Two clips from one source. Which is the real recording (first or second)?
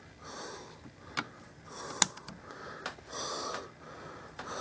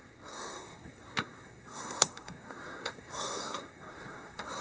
first